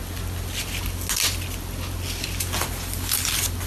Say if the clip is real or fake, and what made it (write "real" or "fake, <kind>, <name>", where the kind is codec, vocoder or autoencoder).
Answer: real